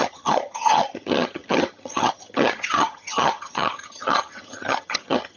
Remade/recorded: remade